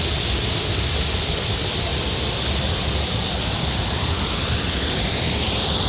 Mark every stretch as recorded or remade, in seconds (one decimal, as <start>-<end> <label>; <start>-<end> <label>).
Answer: 0.0-5.9 recorded